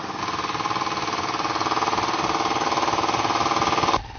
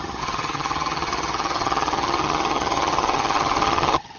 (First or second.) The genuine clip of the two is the first